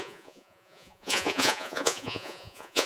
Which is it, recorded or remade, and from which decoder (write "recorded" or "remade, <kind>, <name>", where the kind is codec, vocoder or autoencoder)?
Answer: remade, vocoder, Vocos